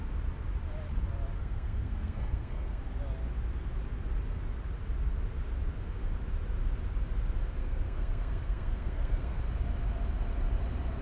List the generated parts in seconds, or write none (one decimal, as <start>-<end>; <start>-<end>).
1.4-2.8; 7.6-9.4